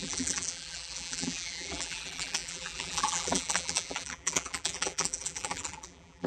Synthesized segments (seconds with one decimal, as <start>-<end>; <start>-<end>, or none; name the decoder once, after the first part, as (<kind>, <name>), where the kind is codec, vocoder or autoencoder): 0.0-6.3 (vocoder, BigVGAN v2)